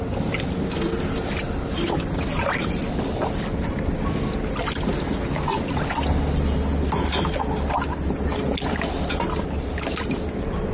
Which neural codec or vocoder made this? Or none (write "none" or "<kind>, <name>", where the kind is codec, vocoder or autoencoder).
none